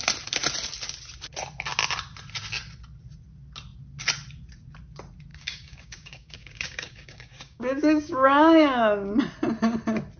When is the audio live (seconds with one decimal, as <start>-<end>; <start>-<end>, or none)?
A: 0.0-5.3; 9.2-10.2